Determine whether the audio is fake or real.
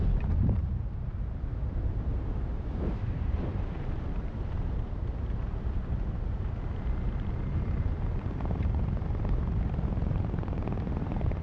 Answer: fake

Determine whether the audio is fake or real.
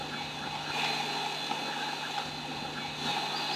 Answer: real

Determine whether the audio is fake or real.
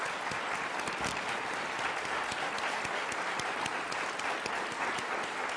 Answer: real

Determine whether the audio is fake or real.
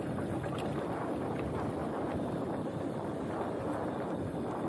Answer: fake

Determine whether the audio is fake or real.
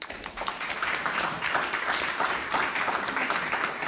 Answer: fake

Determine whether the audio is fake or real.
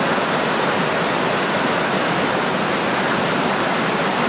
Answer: real